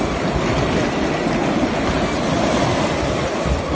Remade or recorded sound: recorded